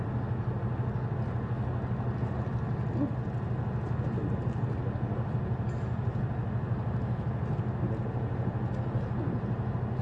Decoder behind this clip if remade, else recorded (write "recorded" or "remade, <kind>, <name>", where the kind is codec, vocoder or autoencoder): recorded